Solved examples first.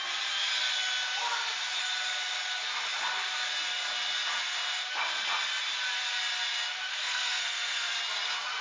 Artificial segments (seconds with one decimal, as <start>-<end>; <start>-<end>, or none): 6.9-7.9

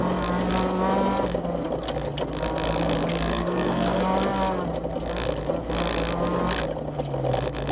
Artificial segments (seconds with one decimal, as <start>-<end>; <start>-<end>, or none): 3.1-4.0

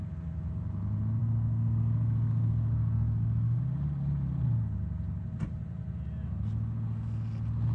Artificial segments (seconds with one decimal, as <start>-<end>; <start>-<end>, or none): 1.2-3.6

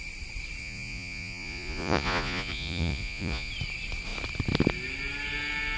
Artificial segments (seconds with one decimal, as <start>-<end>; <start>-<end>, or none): 0.6-3.5

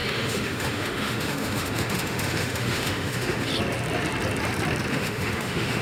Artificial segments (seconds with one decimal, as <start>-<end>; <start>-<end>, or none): 0.0-3.5; 4.9-5.8

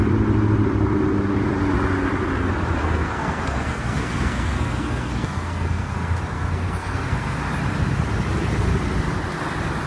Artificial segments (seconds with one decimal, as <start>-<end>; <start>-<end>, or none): 2.8-7.4

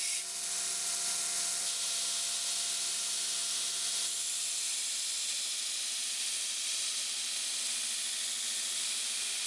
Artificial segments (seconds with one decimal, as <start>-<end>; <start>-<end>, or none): none

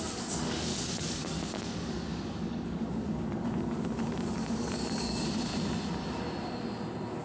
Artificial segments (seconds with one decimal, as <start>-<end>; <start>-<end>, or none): 0.0-5.5